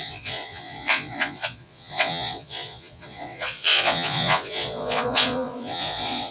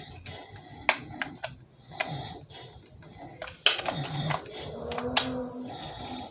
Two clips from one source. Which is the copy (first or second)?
first